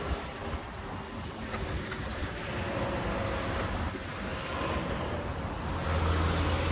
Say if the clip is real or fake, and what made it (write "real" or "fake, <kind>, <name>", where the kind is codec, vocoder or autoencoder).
real